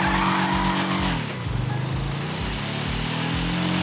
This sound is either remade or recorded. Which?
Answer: recorded